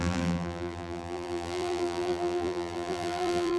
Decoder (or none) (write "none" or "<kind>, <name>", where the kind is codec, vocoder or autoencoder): vocoder, BigVGAN v2